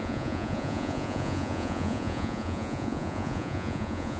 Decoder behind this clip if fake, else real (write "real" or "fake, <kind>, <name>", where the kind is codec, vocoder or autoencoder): fake, vocoder, Vocos